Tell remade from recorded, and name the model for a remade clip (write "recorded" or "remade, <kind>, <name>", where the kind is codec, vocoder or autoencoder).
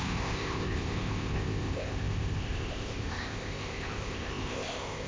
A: remade, codec, ZipCodec